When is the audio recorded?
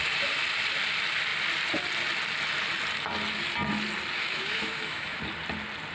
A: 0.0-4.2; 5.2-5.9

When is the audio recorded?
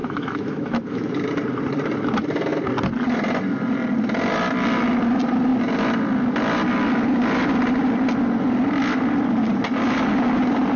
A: 1.1-10.8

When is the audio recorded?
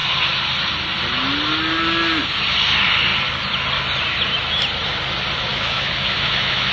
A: 0.0-5.5